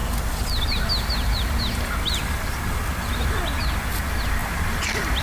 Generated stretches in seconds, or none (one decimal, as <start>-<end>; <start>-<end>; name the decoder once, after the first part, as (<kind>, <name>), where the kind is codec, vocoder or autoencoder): 0.0-1.9 (vocoder, BigVGAN v2); 4.4-5.2